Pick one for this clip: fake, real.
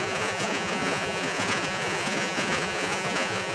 fake